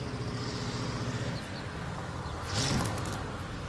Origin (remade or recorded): recorded